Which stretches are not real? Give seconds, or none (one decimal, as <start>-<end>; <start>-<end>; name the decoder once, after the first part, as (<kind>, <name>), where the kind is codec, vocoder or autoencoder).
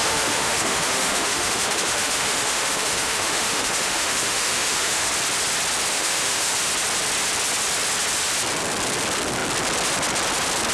0.0-5.1 (autoencoder, DAC-VAE); 5.9-6.5